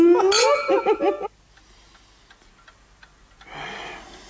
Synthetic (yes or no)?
no